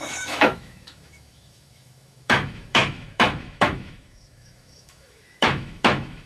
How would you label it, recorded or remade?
remade